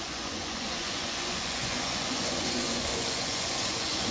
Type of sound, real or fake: fake